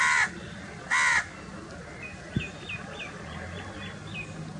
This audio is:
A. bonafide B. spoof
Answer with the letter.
A